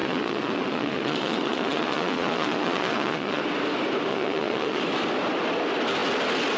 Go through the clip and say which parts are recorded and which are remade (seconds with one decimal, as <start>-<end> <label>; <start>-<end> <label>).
0.0-3.4 remade; 3.4-4.1 recorded; 4.1-4.8 remade; 4.8-6.6 recorded